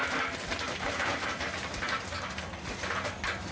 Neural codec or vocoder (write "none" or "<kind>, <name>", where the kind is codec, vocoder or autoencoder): none